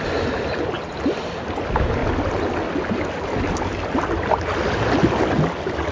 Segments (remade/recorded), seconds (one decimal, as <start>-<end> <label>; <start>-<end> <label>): 0.0-5.9 recorded